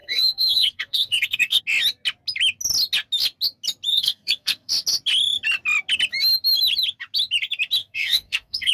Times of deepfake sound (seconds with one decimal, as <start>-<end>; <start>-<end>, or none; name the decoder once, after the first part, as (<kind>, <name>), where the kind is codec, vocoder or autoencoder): 0.0-1.6 (codec, SNAC); 3.9-4.7; 7.8-8.7